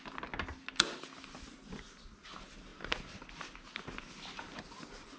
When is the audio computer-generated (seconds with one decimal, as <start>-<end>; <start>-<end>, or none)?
none